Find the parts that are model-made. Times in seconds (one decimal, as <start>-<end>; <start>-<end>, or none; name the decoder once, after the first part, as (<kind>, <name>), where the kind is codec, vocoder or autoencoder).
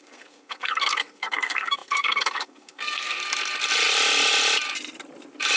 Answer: 0.0-3.2 (codec, SNAC)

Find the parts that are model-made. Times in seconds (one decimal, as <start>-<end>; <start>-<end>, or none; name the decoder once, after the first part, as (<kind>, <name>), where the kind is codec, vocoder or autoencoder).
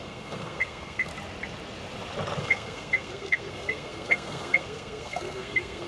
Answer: 0.0-1.1 (codec, SNAC); 2.4-5.9